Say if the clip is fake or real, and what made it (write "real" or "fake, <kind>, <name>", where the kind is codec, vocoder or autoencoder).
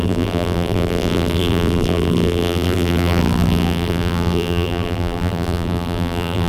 fake, vocoder, BigVGAN v2